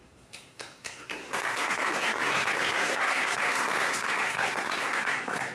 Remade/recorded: remade